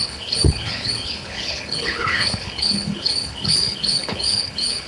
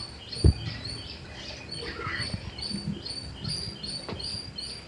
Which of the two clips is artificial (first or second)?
first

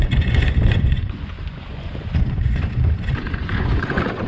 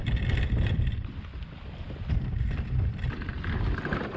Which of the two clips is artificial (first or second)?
first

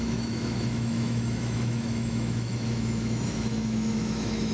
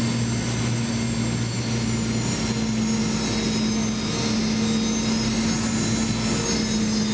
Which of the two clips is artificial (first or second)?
first